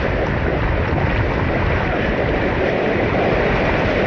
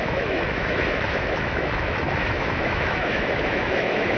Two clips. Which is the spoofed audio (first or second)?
second